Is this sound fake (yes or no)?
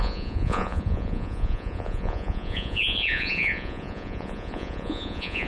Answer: yes